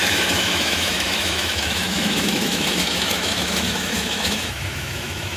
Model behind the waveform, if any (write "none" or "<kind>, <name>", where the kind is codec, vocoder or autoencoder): autoencoder, DAC-VAE